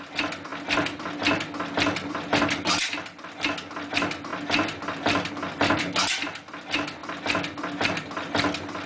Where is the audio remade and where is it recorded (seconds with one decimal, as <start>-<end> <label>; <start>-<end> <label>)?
0.0-8.9 recorded